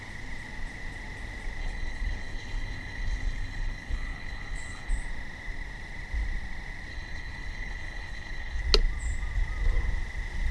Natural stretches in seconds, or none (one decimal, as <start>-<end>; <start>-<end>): 0.0-1.6; 4.9-6.9; 8.6-10.5